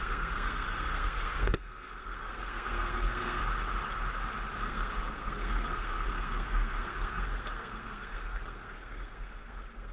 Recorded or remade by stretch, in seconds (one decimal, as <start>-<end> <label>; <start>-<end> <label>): 0.0-3.4 remade; 3.4-4.5 recorded; 4.5-9.9 remade